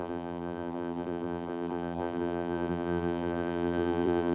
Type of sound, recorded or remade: remade